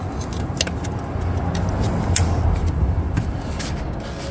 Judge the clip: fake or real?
real